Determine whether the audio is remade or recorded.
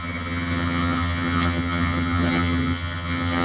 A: remade